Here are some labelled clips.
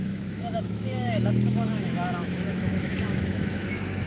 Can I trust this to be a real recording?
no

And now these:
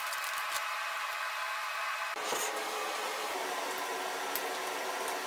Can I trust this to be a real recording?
yes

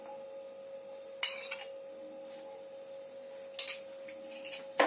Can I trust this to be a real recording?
yes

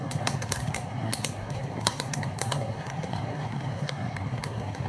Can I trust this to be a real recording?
no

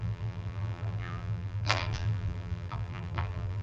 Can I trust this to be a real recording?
no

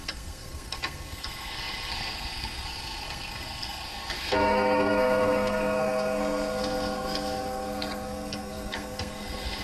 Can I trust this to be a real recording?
no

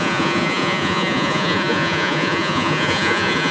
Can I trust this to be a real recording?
no